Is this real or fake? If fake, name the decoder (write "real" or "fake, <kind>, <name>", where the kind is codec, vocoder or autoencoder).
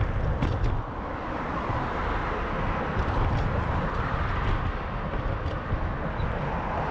real